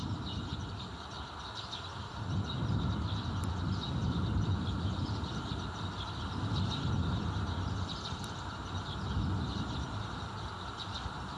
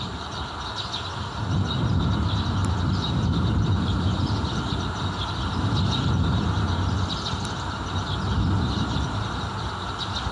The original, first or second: second